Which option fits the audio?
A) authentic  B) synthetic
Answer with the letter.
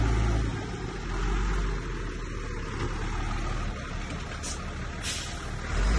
A